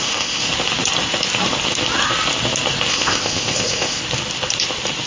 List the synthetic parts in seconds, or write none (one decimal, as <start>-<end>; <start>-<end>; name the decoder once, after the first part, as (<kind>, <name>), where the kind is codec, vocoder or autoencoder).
0.0-0.5 (codec, ZipCodec); 2.9-4.0